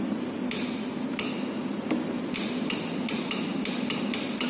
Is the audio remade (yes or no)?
no